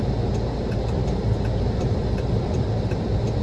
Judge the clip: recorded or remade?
recorded